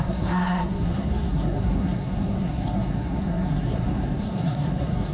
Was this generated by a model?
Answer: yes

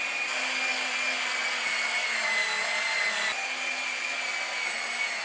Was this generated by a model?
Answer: no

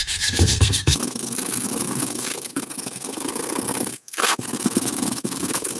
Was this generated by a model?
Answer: yes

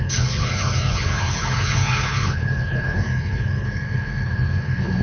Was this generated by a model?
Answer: yes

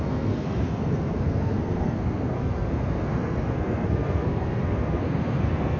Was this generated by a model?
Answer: yes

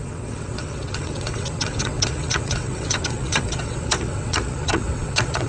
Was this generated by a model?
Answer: yes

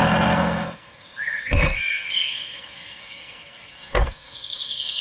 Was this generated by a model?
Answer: yes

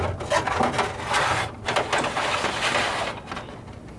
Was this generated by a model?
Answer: no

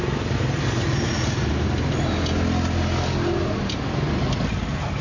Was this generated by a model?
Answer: no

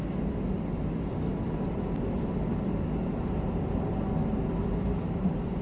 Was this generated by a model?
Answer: no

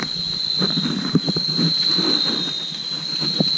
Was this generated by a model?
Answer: no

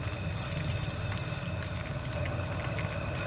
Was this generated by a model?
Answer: no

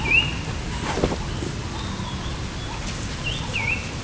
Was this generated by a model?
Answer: no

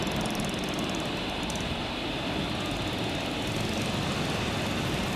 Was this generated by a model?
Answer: no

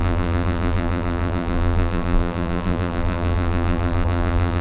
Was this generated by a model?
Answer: yes